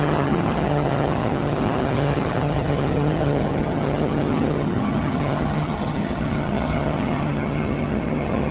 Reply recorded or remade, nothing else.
remade